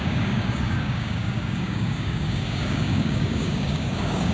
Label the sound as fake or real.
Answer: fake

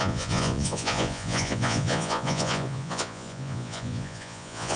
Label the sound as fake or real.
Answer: fake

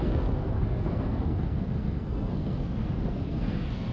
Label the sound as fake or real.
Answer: fake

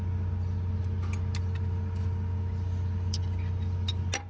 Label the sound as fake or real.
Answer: real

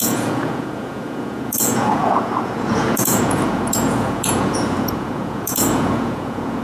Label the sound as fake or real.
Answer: fake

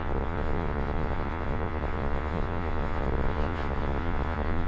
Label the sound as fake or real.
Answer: fake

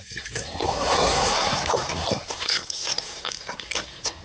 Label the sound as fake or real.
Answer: fake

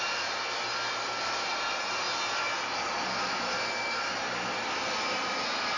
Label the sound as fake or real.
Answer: real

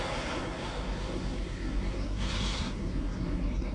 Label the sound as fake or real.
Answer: fake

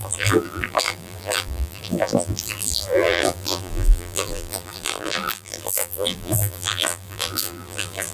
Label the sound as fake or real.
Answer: fake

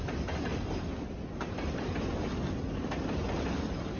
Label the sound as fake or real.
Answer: real